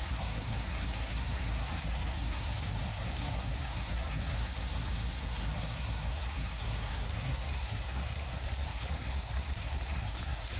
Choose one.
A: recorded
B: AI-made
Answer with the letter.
B